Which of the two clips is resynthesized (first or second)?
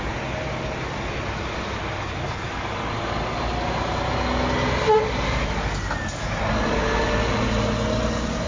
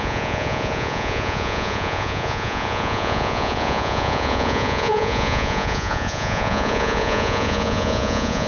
second